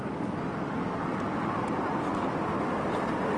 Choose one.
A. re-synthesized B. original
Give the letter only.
B